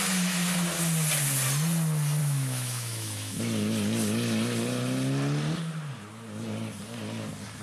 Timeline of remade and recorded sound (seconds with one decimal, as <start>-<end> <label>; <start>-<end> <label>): 0.0-2.2 recorded; 2.2-3.4 remade; 3.4-7.6 recorded